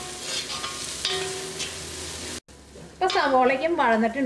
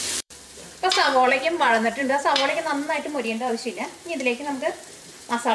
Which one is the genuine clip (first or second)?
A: first